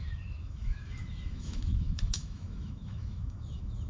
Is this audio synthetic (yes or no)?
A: yes